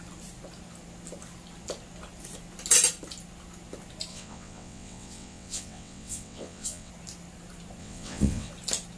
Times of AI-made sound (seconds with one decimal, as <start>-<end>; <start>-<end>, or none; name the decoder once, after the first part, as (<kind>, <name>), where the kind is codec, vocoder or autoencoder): 4.1-6.9 (vocoder, WaveNeXt); 7.8-8.5